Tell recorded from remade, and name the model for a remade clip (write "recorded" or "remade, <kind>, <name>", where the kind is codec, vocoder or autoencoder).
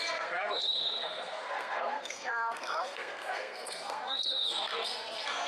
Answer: remade, codec, SNAC